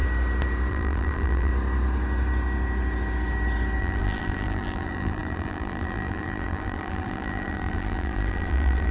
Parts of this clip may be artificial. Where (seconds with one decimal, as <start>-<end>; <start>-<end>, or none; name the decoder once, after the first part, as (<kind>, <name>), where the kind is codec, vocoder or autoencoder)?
0.7-1.5 (vocoder, BigVGAN v2); 3.8-8.9